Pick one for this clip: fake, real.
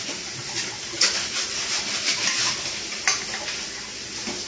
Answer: real